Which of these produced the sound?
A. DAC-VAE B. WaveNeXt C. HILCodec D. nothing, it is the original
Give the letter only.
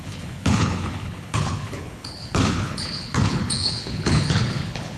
C